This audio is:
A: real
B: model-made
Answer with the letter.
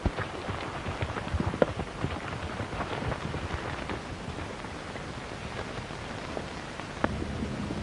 A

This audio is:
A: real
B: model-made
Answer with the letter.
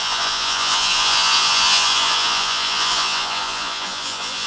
B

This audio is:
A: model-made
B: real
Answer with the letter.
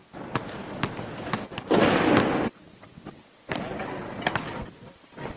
B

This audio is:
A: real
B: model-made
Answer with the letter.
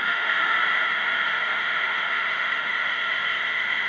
B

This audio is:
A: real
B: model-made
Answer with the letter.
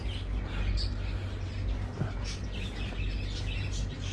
A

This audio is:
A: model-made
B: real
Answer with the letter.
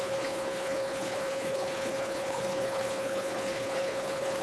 A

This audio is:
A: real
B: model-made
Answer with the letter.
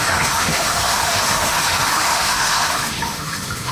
B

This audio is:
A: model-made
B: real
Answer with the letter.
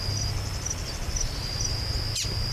B